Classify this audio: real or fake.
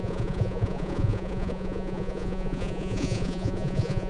fake